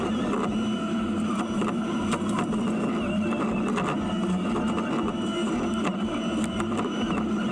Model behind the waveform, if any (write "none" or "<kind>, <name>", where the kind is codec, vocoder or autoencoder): none